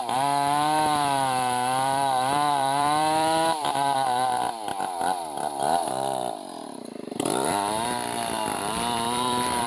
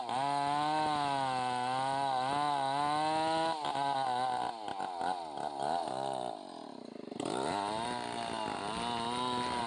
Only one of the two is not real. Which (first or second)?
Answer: first